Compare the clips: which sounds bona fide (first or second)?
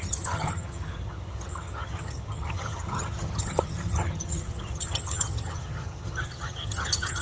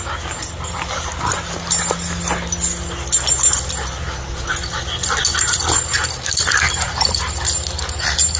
second